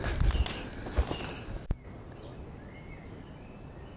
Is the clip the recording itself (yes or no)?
yes